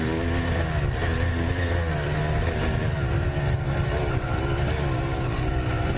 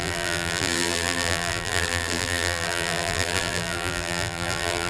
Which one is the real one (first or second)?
first